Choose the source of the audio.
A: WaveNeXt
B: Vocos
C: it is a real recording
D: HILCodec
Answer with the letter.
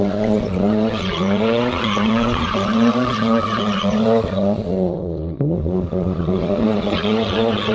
B